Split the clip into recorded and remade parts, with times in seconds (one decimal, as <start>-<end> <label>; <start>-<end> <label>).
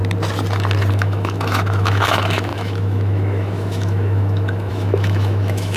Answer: 0.0-0.9 recorded; 0.9-5.8 remade